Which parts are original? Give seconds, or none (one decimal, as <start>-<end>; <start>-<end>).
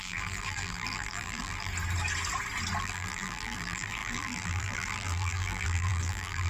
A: 1.7-2.8